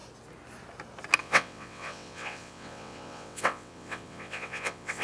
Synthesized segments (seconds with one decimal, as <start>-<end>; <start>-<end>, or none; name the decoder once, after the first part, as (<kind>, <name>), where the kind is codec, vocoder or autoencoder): 1.2-5.0 (vocoder, WaveNeXt)